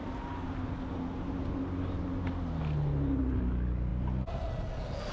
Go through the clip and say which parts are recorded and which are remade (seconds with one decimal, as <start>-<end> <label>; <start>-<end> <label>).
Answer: 0.0-5.1 recorded